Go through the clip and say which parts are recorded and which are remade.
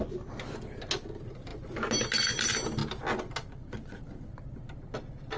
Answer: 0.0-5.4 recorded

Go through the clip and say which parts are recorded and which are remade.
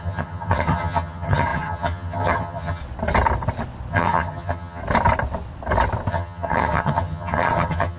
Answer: 0.0-2.8 remade; 2.8-3.9 recorded; 3.9-4.8 remade; 4.8-6.1 recorded; 6.1-8.0 remade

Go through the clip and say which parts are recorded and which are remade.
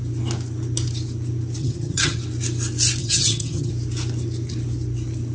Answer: 0.0-1.6 recorded; 1.6-2.2 remade; 2.2-3.0 recorded; 3.0-3.7 remade; 3.7-5.3 recorded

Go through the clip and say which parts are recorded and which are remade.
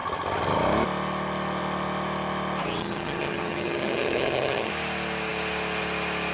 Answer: 0.0-2.8 recorded; 2.8-4.7 remade; 4.7-6.3 recorded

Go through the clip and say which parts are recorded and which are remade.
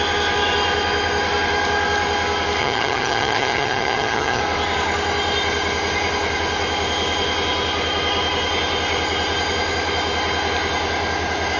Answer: 0.0-2.6 recorded; 2.6-4.4 remade; 4.4-11.6 recorded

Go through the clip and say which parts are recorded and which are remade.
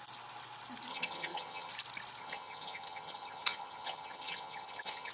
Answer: 0.0-0.9 recorded; 0.9-1.7 remade; 1.7-2.2 recorded; 2.2-5.1 remade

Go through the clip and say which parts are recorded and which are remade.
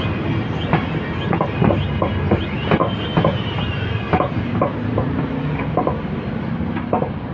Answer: 0.0-7.3 recorded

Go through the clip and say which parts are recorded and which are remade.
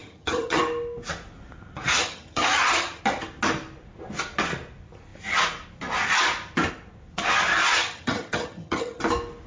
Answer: 0.0-0.6 remade; 0.6-1.9 recorded; 1.9-3.0 remade; 3.0-7.7 recorded; 7.7-9.0 remade; 9.0-9.5 recorded